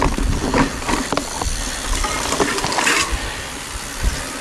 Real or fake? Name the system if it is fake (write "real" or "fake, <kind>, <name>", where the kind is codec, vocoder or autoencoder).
real